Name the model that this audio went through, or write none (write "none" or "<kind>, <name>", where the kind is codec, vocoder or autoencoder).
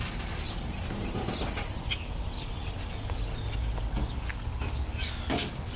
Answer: none